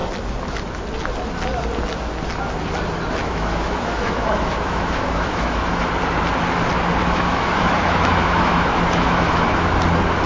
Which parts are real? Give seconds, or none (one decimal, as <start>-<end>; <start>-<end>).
0.0-3.2; 5.9-7.0; 9.7-10.3